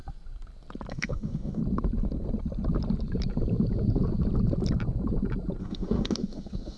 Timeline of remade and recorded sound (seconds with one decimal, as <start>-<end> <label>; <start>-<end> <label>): 0.0-0.9 recorded; 0.9-1.6 remade; 1.6-5.6 recorded; 5.6-6.8 remade

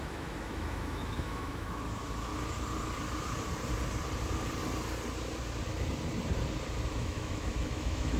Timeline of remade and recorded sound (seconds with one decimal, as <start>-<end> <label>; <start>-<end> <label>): 0.0-2.3 remade; 2.3-6.9 recorded; 6.9-8.2 remade

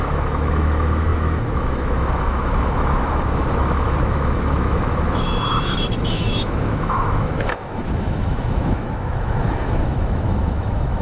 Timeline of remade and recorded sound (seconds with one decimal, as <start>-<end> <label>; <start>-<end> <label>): 0.0-11.0 remade

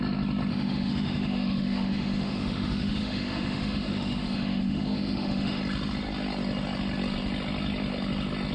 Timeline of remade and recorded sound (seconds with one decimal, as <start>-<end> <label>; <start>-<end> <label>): 0.0-0.5 recorded; 0.5-5.6 remade; 5.6-8.5 recorded

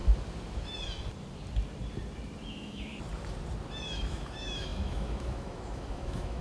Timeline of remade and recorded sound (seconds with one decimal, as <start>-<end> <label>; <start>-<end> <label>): 0.0-2.5 recorded; 2.5-2.9 remade; 2.9-3.8 recorded; 3.8-6.4 remade

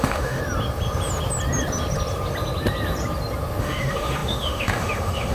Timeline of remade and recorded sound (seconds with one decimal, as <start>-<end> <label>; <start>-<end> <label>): 0.0-0.4 remade; 0.4-3.6 recorded; 3.6-5.3 remade

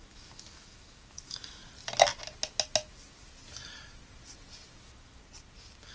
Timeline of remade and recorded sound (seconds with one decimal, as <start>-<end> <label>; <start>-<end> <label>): 0.0-1.6 remade; 1.6-4.8 recorded; 4.8-5.2 remade; 5.2-5.9 recorded